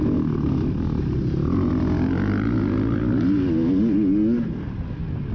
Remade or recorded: recorded